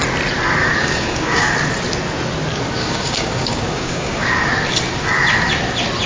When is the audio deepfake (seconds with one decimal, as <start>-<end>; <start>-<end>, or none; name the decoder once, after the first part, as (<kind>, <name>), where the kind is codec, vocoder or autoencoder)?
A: 0.6-1.5 (codec, DAC); 2.8-4.5